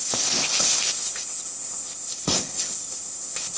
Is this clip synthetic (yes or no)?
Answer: yes